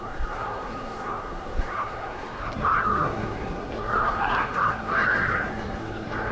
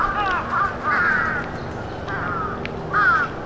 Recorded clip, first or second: second